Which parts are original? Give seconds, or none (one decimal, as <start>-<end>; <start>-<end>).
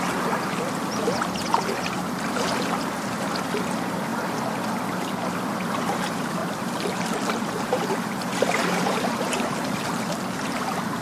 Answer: 0.0-6.4